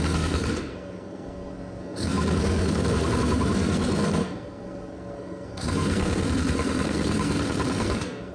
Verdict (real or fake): fake